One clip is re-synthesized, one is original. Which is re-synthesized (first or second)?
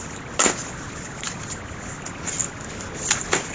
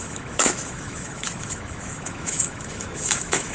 second